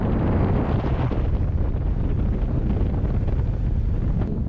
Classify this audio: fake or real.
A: real